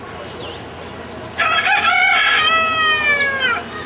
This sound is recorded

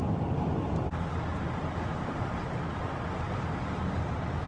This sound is remade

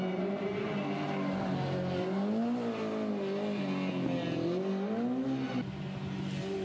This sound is recorded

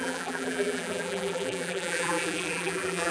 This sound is remade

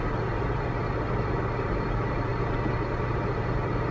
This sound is remade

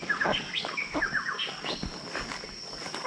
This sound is remade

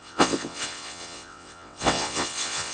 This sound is remade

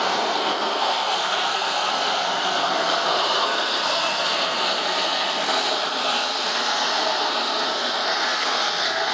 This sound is remade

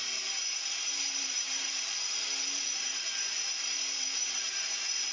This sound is remade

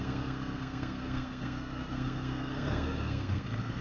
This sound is remade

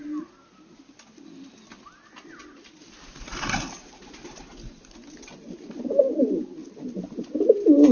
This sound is recorded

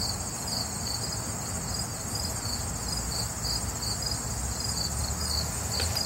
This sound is recorded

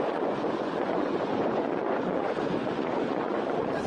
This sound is remade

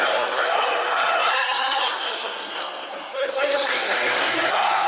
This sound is remade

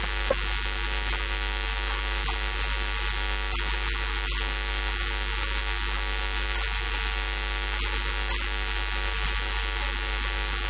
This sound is recorded